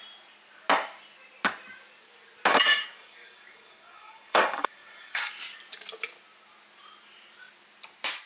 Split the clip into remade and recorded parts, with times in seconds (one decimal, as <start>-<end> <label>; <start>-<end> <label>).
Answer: 0.0-2.5 recorded; 2.5-5.3 remade; 5.3-8.3 recorded